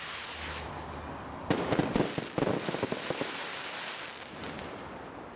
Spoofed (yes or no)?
no